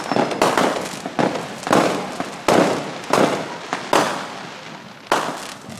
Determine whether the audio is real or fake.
real